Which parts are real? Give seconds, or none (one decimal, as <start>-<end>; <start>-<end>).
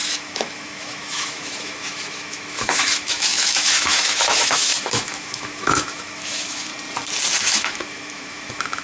6.7-7.4